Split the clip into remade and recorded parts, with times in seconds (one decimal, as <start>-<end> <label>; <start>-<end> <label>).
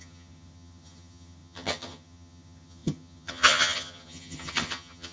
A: 0.0-5.1 remade